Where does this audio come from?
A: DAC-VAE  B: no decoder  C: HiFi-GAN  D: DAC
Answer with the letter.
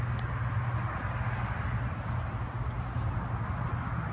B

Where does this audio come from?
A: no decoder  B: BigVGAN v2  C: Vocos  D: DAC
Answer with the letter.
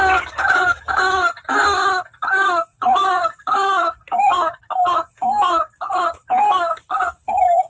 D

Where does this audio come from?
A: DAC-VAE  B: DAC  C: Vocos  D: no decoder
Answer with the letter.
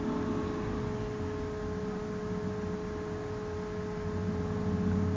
D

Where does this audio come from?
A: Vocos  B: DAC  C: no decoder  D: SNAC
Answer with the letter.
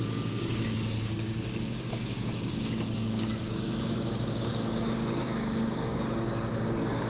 B